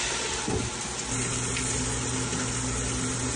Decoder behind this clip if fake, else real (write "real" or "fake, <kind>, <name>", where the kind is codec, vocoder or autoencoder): real